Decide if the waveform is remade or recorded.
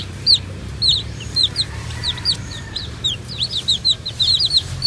remade